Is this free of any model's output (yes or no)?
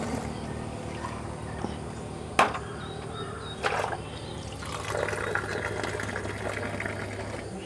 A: yes